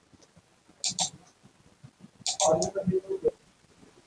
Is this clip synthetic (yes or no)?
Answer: no